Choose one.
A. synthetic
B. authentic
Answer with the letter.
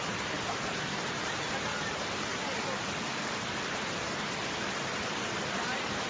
B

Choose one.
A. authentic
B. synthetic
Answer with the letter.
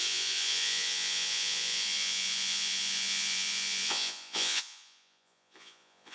B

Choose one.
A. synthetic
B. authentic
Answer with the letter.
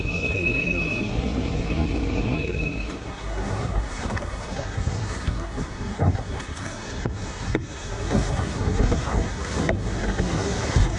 A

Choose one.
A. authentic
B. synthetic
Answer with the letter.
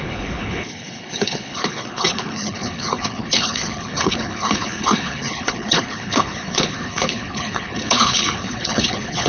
B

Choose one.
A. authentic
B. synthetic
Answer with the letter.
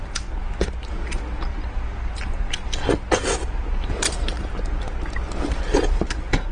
A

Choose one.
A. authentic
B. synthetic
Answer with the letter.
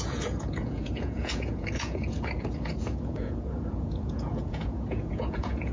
B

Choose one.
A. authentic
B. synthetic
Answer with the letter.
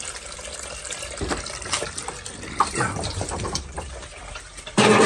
B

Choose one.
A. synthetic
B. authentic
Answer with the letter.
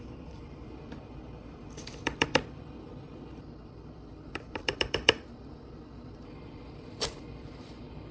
A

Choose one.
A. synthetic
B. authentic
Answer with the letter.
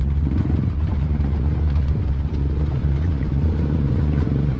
A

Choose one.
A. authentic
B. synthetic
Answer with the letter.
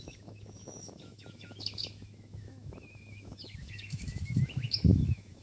B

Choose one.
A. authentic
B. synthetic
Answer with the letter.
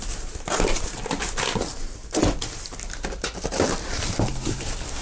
A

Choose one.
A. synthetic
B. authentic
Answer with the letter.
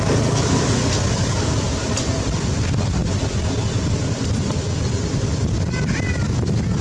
B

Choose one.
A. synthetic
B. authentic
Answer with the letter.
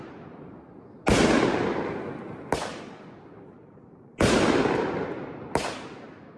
B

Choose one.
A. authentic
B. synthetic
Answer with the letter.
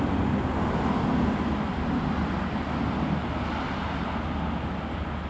A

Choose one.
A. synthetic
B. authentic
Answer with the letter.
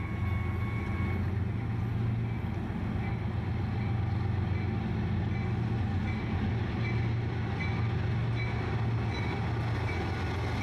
B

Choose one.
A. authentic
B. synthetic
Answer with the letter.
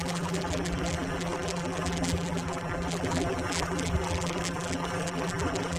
B